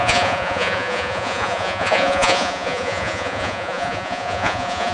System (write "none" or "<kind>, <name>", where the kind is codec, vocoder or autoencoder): vocoder, Vocos